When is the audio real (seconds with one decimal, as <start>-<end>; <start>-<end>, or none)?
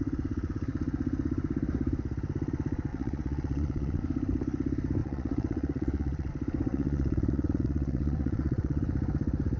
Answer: 0.0-2.9; 4.0-5.0; 6.3-6.7; 8.8-9.6